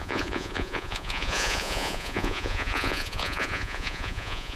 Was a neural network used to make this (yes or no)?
yes